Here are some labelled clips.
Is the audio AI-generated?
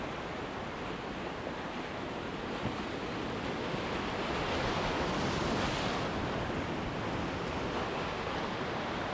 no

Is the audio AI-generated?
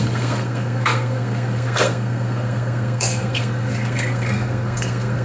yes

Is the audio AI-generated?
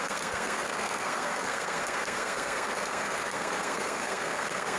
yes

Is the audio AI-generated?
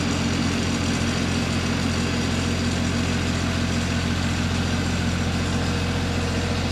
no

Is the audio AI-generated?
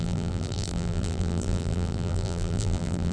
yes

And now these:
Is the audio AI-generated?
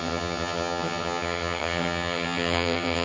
yes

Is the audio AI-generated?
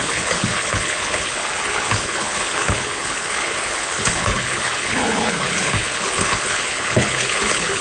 yes